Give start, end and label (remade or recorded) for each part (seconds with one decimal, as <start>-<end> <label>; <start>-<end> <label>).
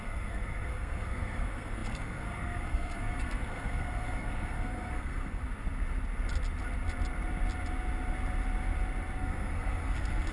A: 0.0-5.4 remade; 5.4-9.2 recorded; 9.2-10.3 remade